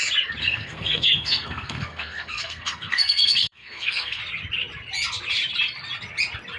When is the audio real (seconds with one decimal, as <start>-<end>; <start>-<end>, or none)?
0.0-0.4; 4.2-6.6